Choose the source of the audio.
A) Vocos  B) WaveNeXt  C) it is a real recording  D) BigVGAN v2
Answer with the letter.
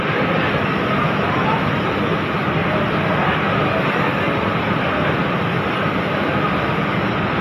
C